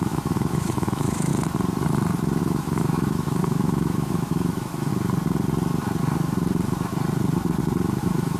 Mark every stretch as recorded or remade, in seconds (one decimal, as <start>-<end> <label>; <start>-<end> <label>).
0.0-1.3 remade; 1.3-2.4 recorded; 2.4-4.9 remade; 4.9-8.0 recorded; 8.0-8.4 remade